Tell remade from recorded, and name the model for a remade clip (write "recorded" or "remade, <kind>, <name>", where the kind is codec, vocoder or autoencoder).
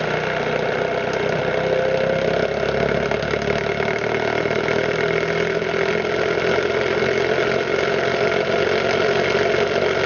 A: recorded